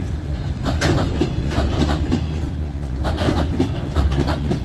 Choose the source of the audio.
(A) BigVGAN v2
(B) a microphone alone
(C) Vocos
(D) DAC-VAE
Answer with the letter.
C